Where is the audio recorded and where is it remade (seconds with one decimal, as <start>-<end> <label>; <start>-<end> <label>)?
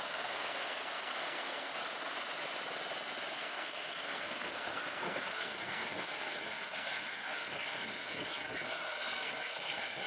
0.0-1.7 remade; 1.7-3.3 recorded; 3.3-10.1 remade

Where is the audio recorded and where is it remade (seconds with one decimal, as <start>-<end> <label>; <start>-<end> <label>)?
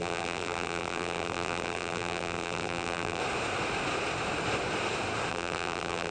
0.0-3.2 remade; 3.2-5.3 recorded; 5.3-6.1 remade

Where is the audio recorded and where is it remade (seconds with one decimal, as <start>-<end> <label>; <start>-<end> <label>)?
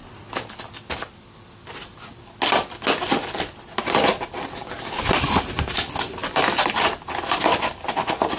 0.0-8.4 recorded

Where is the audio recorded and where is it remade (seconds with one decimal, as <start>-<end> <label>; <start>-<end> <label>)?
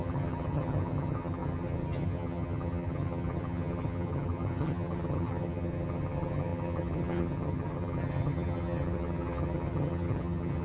0.0-10.6 remade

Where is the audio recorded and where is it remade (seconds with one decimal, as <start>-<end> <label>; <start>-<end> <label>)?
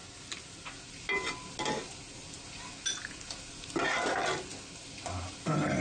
0.0-5.8 recorded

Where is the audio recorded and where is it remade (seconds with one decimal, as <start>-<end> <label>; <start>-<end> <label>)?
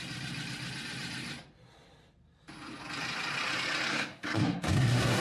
0.0-3.9 recorded; 3.9-5.2 remade